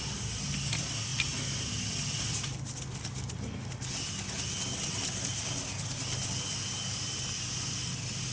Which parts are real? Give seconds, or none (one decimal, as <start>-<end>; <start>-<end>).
0.0-8.3